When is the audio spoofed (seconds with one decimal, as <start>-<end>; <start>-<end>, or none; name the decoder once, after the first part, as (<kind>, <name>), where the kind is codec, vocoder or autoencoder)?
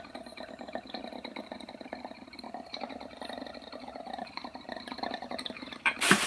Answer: 0.0-4.5 (vocoder, BigVGAN v2); 5.1-6.3